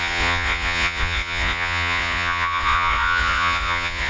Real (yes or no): no